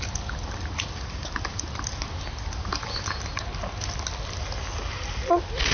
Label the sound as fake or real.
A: real